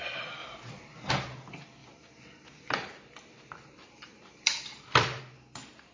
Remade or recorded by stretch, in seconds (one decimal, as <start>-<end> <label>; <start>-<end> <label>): 0.0-1.8 recorded; 1.8-5.2 remade; 5.2-5.9 recorded